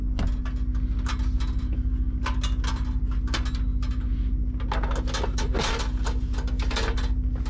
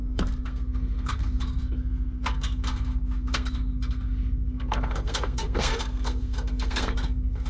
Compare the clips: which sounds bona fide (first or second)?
first